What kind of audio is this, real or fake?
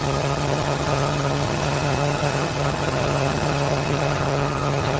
fake